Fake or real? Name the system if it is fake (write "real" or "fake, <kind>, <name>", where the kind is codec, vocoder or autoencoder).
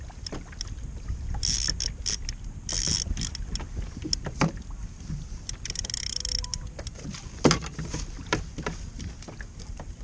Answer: real